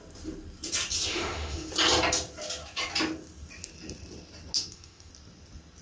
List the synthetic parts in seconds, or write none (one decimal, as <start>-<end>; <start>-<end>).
1.1-1.7; 4.6-5.1